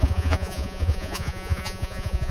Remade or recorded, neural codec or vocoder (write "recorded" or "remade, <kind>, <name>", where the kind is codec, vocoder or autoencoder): remade, vocoder, Vocos